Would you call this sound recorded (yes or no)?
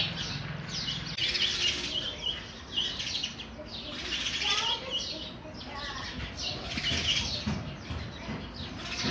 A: yes